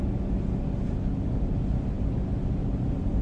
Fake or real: real